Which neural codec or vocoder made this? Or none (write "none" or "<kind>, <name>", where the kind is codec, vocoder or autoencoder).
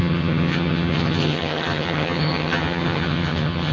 vocoder, HiFi-GAN